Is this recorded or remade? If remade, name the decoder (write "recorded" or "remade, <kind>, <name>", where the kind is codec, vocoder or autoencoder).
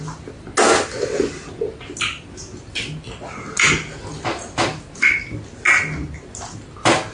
recorded